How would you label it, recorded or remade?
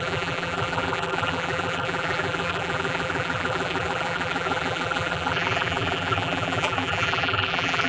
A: remade